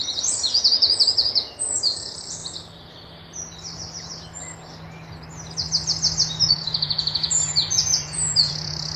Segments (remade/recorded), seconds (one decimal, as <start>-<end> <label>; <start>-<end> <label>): 0.0-2.4 remade; 2.4-6.5 recorded; 6.5-9.0 remade